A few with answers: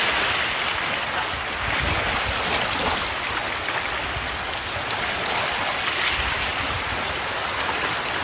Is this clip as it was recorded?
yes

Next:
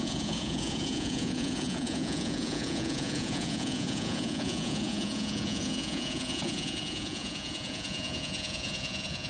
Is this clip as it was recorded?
no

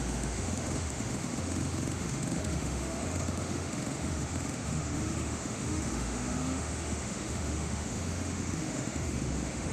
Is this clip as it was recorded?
no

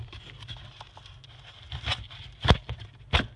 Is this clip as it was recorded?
yes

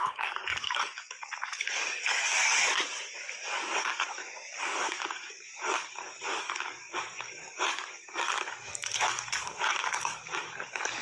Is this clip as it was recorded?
no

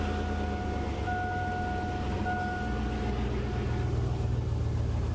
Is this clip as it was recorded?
yes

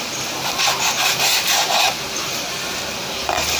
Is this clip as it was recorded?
no